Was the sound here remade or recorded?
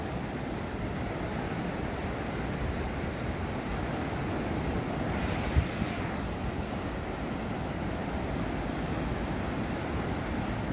recorded